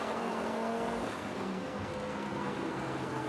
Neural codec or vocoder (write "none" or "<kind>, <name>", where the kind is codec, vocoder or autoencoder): codec, SNAC